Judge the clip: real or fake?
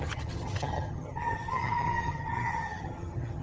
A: fake